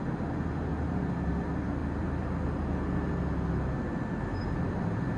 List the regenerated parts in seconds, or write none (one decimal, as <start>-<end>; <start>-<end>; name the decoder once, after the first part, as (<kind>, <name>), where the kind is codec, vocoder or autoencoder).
0.7-1.3 (vocoder, BigVGAN v2); 1.8-2.6